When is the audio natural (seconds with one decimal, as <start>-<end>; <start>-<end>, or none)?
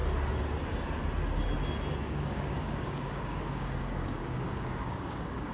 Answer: 0.0-2.0